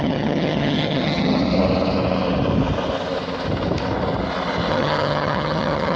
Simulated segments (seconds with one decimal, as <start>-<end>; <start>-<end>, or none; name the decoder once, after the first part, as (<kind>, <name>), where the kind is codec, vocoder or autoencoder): 0.0-1.4 (vocoder, HiFi-GAN); 4.7-6.0